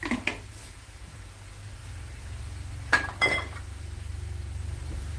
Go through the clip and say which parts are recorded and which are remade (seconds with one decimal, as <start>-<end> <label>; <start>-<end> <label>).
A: 0.0-0.6 recorded; 0.6-1.2 remade; 1.2-1.8 recorded; 1.8-5.2 remade

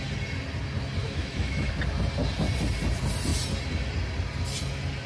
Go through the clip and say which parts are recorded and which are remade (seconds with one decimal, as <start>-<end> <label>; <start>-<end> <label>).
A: 0.0-1.0 recorded; 1.0-1.7 remade; 1.7-5.1 recorded

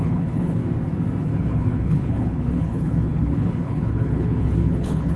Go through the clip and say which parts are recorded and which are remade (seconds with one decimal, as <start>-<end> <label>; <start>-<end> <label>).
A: 0.0-0.6 remade; 0.6-1.2 recorded; 1.2-5.2 remade

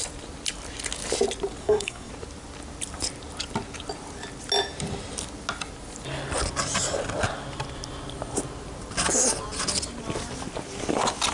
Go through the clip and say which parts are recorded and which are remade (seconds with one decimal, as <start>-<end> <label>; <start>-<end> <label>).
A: 0.0-1.6 recorded; 1.6-2.1 remade; 2.1-11.3 recorded